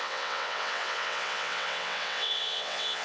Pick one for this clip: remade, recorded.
remade